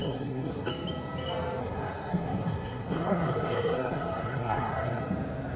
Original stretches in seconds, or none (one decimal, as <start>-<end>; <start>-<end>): 0.7-1.6; 5.0-5.6